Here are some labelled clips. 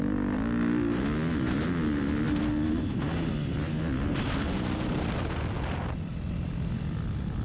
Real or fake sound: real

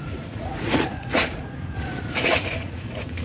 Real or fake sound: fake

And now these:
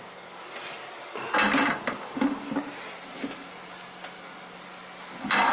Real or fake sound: real